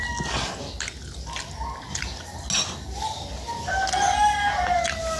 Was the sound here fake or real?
real